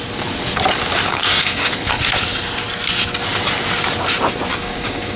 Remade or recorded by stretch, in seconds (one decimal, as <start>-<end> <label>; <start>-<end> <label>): 0.0-1.1 recorded; 1.1-1.7 remade; 1.7-4.5 recorded; 4.5-5.2 remade